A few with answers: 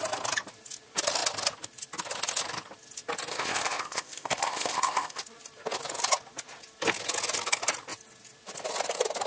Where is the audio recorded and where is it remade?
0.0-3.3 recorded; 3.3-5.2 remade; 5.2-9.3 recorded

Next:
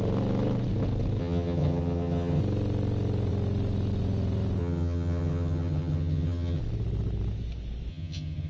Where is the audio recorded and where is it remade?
0.0-1.2 recorded; 1.2-2.4 remade; 2.4-4.6 recorded; 4.6-6.6 remade; 6.6-7.9 recorded; 7.9-8.5 remade

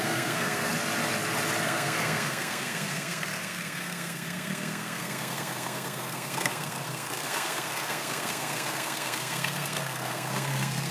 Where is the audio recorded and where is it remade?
0.0-0.7 remade; 0.7-1.6 recorded; 1.6-10.9 remade

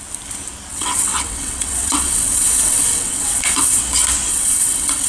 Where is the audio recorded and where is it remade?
0.0-0.7 recorded; 0.7-3.8 remade; 3.8-4.3 recorded; 4.3-5.1 remade

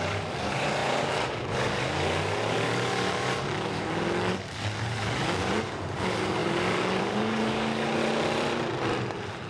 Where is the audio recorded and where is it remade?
0.0-8.0 remade; 8.0-9.5 recorded

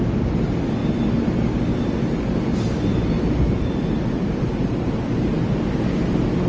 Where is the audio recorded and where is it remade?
0.0-0.8 recorded; 0.8-2.0 remade; 2.0-2.5 recorded; 2.5-5.3 remade; 5.3-6.5 recorded